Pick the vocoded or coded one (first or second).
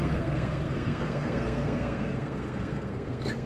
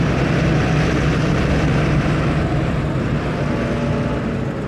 first